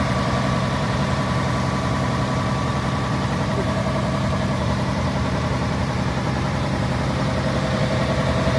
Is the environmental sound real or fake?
fake